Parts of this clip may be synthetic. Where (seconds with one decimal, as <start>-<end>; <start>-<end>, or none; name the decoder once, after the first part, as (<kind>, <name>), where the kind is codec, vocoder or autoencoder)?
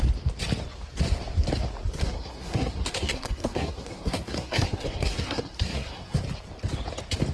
2.0-6.2 (codec, SNAC)